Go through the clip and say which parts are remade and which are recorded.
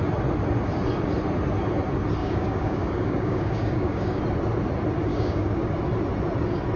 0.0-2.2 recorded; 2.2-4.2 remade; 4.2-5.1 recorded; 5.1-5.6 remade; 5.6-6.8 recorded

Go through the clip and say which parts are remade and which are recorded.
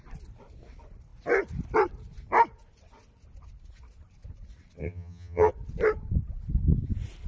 0.0-4.8 recorded; 4.8-5.5 remade; 5.5-7.3 recorded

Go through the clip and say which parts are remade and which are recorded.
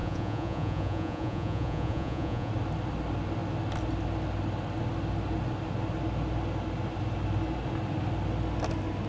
0.0-2.5 remade; 2.5-9.1 recorded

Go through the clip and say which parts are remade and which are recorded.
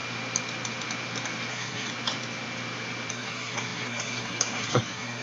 0.0-1.5 recorded; 1.5-1.9 remade; 1.9-3.1 recorded; 3.1-5.2 remade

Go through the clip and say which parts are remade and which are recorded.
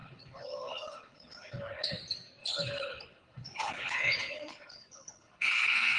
0.0-1.9 remade; 1.9-2.4 recorded; 2.4-6.0 remade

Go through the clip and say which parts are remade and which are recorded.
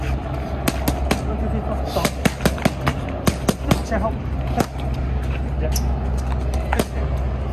0.0-7.5 recorded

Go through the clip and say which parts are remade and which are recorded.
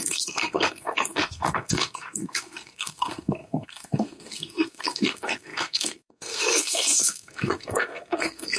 0.0-8.6 remade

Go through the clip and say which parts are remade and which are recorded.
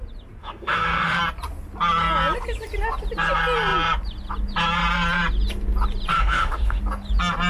0.0-0.4 recorded; 0.4-1.2 remade; 1.2-6.1 recorded; 6.1-6.8 remade; 6.8-7.5 recorded